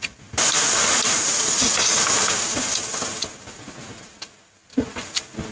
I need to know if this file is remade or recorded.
recorded